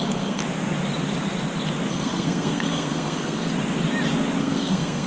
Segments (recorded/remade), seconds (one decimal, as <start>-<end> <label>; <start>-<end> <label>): 0.0-0.4 remade; 0.4-1.9 recorded; 1.9-3.5 remade; 3.5-4.4 recorded; 4.4-5.1 remade